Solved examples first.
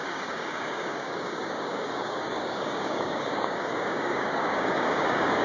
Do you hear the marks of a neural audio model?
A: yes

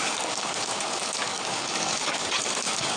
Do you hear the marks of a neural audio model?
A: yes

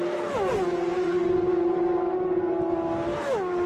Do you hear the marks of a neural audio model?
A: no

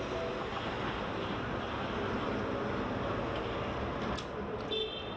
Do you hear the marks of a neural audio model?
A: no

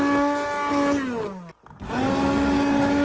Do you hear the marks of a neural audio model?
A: no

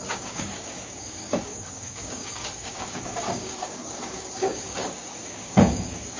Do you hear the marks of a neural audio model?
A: yes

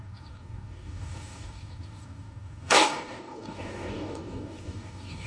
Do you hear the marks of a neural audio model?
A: yes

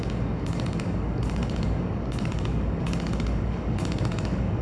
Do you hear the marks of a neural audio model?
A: yes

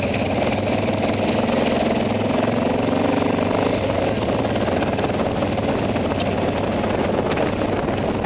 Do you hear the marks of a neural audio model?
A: no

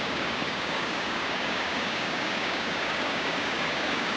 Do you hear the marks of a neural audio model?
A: yes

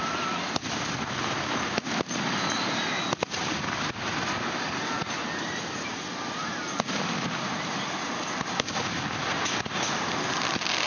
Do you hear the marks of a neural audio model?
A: no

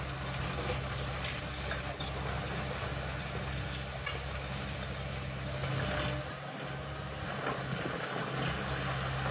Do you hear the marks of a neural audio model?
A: no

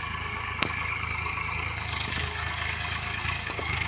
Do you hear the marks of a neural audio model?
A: yes